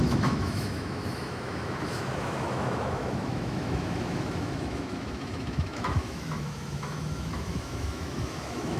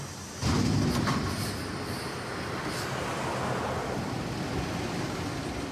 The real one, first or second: second